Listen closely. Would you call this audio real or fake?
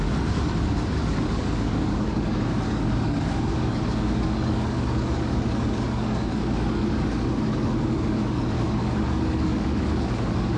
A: fake